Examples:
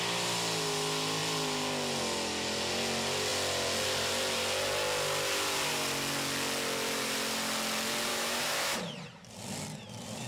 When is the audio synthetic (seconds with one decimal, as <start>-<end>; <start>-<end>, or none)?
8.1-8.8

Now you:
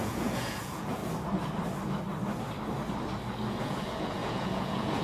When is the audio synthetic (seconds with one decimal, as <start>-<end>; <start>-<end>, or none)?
0.0-1.0; 3.6-5.0

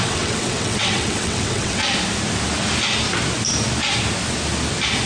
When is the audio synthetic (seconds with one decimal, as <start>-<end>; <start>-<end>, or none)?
0.0-1.8